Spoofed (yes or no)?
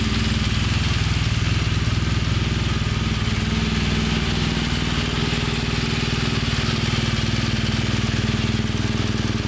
no